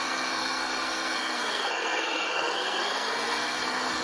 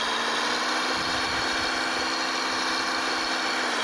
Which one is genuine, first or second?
second